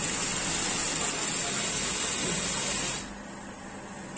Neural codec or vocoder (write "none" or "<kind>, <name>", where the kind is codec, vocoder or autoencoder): none